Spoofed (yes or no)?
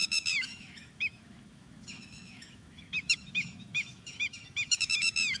yes